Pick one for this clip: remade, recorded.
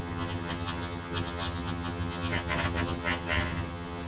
remade